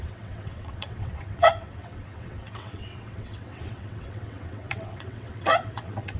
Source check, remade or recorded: remade